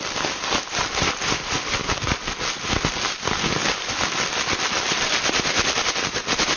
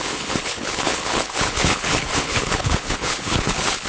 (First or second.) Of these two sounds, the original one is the first